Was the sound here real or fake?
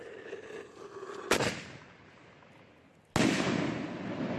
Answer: real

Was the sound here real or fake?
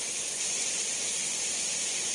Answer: fake